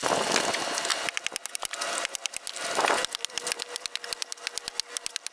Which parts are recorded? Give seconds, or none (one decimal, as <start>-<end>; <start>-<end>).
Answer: 0.0-5.3